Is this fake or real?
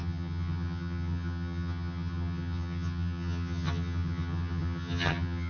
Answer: fake